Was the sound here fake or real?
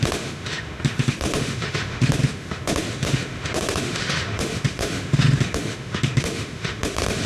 fake